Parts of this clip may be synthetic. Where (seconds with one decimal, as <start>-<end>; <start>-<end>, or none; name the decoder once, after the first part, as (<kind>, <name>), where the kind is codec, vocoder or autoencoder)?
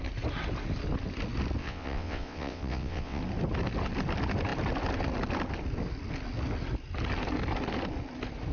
1.6-3.2 (vocoder, WaveNeXt)